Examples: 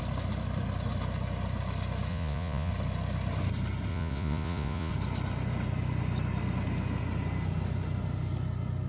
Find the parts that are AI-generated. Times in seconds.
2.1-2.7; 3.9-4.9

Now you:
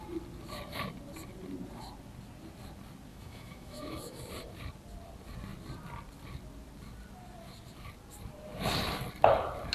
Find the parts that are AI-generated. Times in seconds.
3.1-4.2

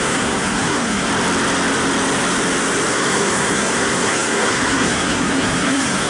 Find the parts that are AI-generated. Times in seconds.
0.0-1.1; 2.9-6.1

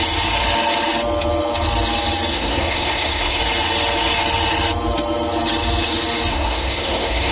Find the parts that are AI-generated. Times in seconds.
2.3-3.4; 6.3-7.3

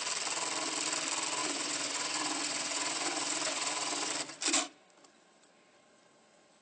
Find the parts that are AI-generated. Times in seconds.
1.4-4.1